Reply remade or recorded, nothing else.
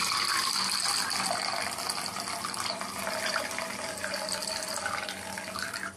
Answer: recorded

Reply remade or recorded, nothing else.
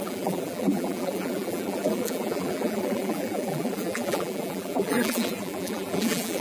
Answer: remade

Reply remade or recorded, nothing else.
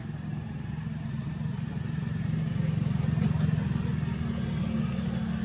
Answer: recorded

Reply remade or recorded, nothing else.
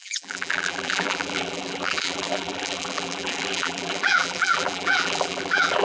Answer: remade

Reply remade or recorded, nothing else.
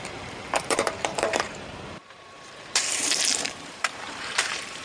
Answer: remade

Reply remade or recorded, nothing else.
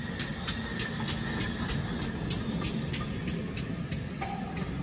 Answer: recorded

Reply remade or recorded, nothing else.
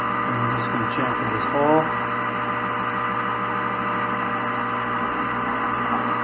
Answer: recorded